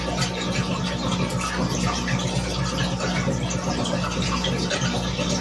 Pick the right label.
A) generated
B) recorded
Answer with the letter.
B